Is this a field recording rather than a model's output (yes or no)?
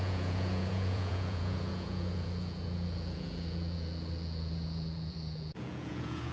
no